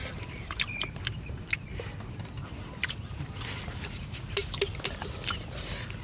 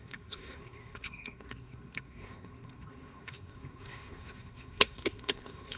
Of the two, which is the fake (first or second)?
second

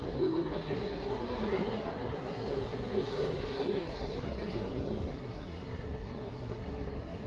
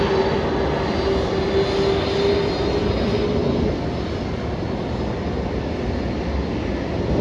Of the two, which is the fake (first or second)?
first